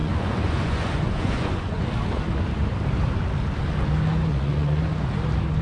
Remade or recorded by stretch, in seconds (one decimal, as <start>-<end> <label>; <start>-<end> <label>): 0.0-1.8 remade; 1.8-4.3 recorded; 4.3-4.8 remade; 4.8-5.6 recorded

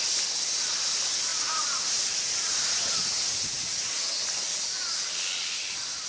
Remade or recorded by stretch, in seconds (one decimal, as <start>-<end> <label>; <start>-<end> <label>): 0.0-1.3 recorded; 1.3-3.9 remade; 3.9-6.1 recorded